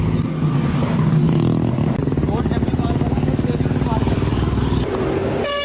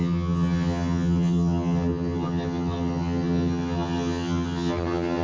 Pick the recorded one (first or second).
first